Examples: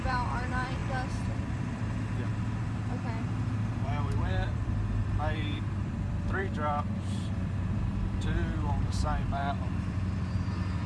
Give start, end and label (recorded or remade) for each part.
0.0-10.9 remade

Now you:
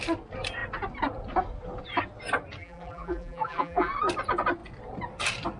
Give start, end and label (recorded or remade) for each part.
0.0-2.6 recorded; 2.6-3.9 remade; 3.9-5.6 recorded

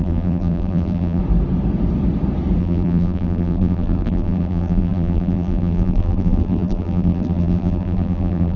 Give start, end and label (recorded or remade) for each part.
0.0-1.2 remade; 1.2-2.6 recorded; 2.6-8.6 remade

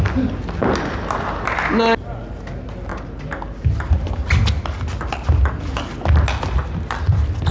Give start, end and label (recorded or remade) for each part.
0.0-7.5 recorded

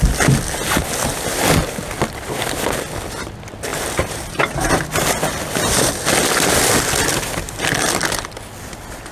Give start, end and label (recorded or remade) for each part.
0.0-3.7 recorded; 3.7-4.7 remade; 4.7-9.1 recorded

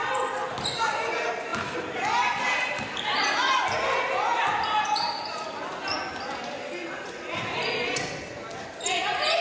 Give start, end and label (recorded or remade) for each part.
0.0-1.5 recorded; 1.5-3.6 remade; 3.6-9.4 recorded

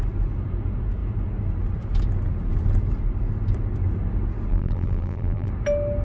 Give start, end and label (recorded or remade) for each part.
0.0-4.5 recorded; 4.5-5.5 remade; 5.5-6.0 recorded

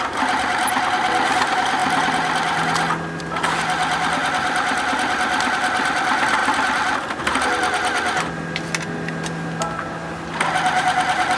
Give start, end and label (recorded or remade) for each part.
0.0-11.4 recorded